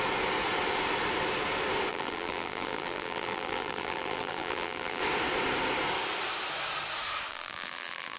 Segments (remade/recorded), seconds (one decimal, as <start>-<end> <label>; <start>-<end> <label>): 0.0-1.9 recorded; 1.9-5.0 remade; 5.0-7.3 recorded; 7.3-8.2 remade